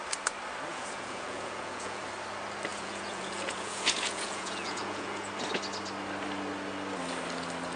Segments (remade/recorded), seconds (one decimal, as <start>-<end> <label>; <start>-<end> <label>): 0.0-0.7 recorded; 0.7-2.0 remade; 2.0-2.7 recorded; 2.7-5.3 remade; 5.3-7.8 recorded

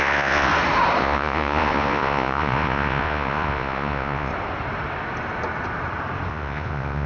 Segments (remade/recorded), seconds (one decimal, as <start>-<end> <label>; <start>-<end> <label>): 0.0-0.5 remade; 0.5-1.0 recorded; 1.0-4.3 remade; 4.3-6.3 recorded; 6.3-7.1 remade

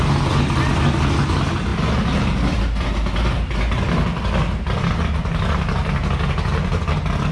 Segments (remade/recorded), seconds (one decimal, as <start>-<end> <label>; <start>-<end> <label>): 0.0-7.3 recorded

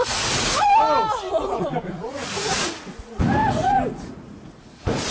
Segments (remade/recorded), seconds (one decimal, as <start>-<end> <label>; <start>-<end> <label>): 0.0-0.7 remade; 0.7-1.3 recorded; 1.3-5.1 remade